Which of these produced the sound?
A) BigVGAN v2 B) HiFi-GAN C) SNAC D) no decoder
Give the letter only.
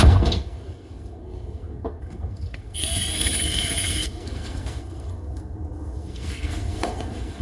C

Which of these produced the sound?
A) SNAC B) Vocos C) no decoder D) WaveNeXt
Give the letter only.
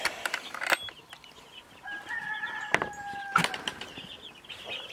C